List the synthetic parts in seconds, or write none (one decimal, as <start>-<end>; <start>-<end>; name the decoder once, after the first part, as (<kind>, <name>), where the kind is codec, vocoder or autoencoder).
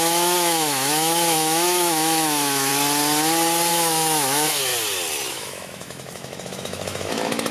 0.0-2.7 (autoencoder, DAC-VAE); 3.7-4.7; 5.3-7.5